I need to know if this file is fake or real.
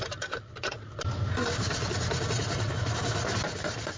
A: real